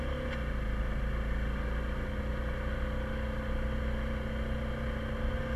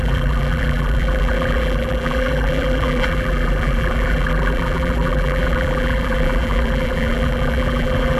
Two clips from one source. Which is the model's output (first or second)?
second